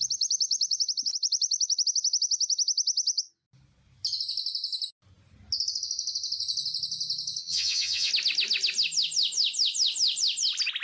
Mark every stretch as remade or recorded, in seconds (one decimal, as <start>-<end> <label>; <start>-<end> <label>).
0.0-7.4 recorded; 7.4-8.1 remade; 8.1-10.8 recorded